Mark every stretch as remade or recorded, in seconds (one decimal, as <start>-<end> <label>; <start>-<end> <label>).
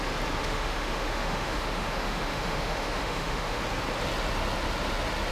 0.0-0.4 recorded; 0.4-3.6 remade; 3.6-5.3 recorded